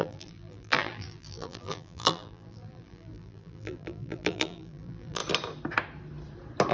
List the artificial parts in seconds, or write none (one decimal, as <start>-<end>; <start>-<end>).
0.0-5.2